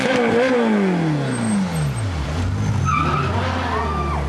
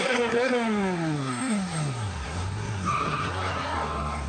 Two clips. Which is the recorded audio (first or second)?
first